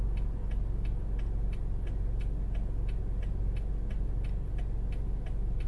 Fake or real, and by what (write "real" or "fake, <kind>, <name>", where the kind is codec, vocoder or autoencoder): real